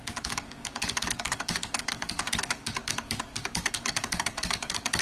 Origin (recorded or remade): remade